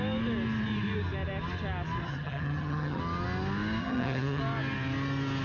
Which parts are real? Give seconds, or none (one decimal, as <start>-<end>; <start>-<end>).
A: 0.0-2.0; 3.0-3.8; 4.4-5.4